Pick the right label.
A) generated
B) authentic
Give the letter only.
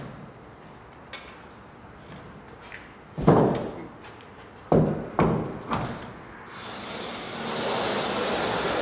B